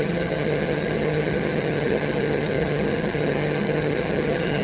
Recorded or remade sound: remade